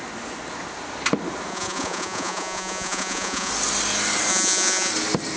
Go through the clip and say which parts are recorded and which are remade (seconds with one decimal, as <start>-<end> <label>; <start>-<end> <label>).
0.0-1.5 recorded; 1.5-3.5 remade; 3.5-4.3 recorded; 4.3-4.9 remade; 4.9-5.4 recorded